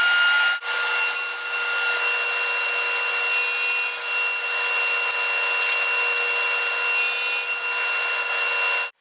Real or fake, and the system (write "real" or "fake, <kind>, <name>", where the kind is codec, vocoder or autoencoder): real